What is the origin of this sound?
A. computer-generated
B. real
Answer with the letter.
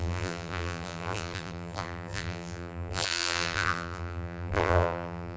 A